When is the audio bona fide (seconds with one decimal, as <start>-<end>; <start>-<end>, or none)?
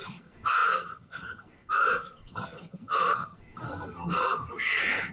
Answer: none